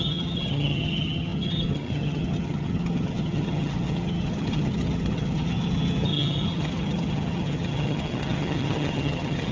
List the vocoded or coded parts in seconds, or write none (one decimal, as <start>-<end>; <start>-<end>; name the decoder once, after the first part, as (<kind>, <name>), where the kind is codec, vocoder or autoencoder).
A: 0.0-9.5 (vocoder, HiFi-GAN)